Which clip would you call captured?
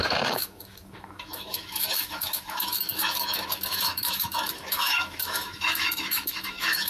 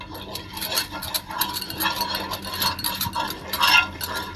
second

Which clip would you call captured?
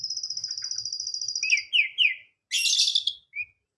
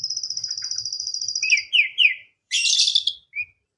first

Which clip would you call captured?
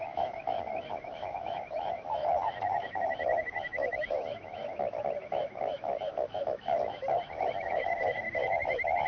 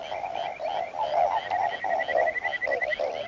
second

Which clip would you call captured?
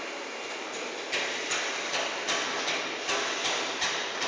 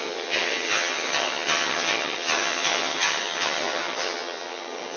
first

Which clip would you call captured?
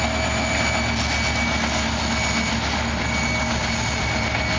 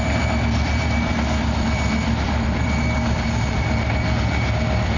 first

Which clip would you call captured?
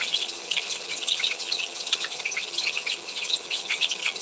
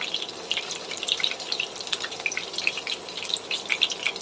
second